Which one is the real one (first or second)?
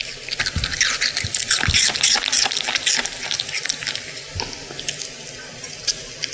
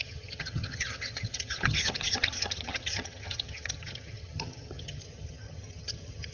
first